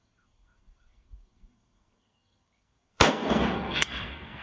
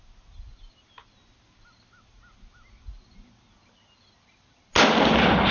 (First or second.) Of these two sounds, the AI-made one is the first